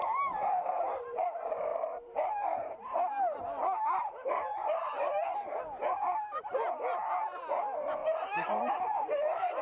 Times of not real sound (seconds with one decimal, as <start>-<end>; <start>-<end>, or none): 0.0-9.6